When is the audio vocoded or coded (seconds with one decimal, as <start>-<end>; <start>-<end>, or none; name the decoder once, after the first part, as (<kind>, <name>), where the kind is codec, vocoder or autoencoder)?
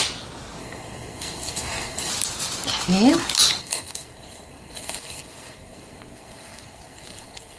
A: 0.6-2.1 (codec, SNAC); 3.6-7.6